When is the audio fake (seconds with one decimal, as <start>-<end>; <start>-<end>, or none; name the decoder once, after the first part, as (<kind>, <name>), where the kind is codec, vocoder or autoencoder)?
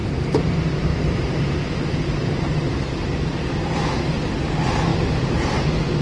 0.0-1.7 (vocoder, BigVGAN v2); 2.2-2.9; 4.9-5.6